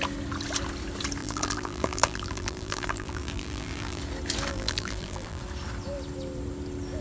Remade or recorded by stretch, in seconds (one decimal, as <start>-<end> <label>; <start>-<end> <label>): 0.0-1.2 recorded; 1.2-4.0 remade; 4.0-4.5 recorded; 4.5-5.4 remade; 5.4-7.0 recorded